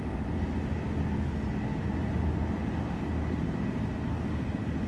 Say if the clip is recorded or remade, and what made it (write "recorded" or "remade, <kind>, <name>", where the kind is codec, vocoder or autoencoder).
recorded